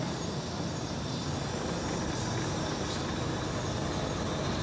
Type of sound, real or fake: real